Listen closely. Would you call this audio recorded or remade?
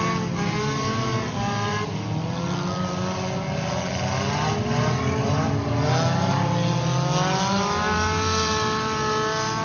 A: recorded